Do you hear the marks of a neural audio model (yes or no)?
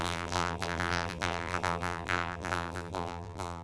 yes